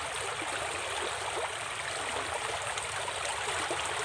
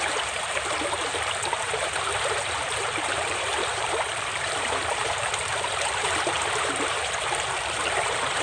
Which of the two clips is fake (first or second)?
second